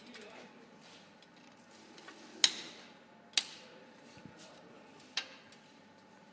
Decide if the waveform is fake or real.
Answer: real